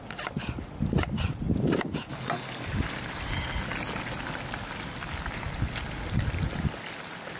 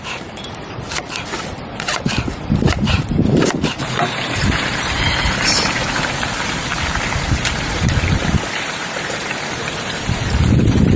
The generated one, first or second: second